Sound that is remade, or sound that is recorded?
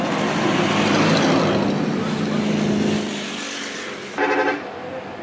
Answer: recorded